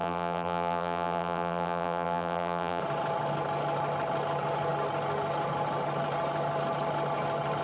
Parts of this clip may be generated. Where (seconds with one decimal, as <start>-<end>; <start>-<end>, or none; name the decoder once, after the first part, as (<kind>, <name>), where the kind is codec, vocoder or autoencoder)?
0.0-2.8 (vocoder, BigVGAN v2)